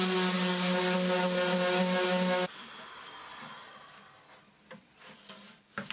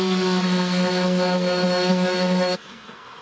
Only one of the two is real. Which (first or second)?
first